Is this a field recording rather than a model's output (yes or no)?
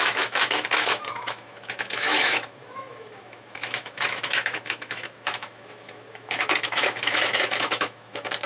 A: no